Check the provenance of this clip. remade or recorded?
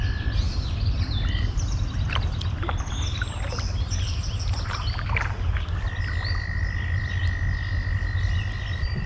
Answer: recorded